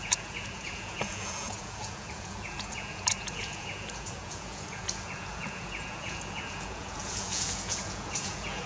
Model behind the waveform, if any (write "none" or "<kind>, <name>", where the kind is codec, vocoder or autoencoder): vocoder, Vocos